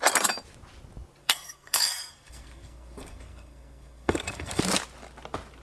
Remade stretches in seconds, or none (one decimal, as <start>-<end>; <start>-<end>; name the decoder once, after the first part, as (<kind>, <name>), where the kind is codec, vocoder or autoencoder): 1.2-4.6 (codec, SNAC)